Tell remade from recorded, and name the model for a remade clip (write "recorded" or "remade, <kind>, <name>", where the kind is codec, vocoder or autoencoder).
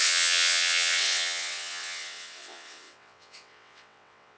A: remade, vocoder, WaveNeXt